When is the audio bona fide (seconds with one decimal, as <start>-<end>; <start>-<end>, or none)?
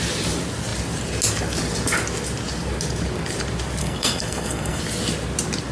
0.0-3.8; 4.8-5.7